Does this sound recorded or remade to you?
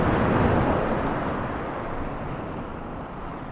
recorded